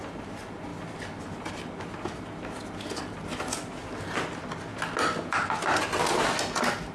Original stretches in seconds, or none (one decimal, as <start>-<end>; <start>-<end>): 0.0-6.9

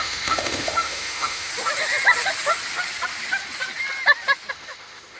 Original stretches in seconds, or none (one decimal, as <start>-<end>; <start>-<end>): 1.5-4.5

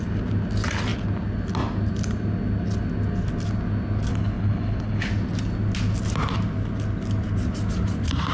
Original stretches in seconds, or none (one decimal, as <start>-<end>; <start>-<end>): 0.0-4.1; 5.1-8.3

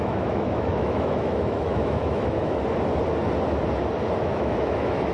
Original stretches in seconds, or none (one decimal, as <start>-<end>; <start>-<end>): 2.6-4.2